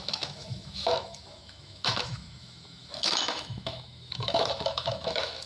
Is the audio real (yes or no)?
no